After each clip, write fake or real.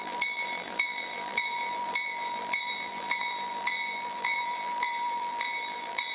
fake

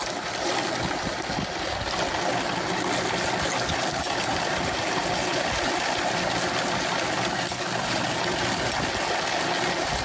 real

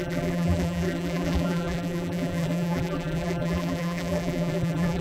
fake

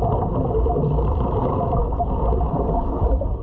fake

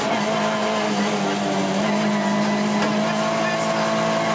real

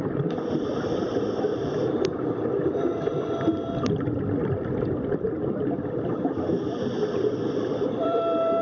fake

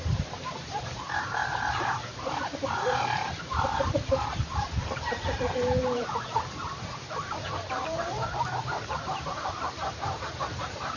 fake